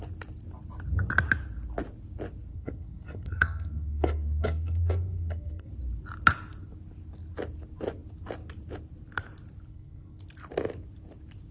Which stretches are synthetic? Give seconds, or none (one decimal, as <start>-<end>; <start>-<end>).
2.5-5.7; 9.7-10.2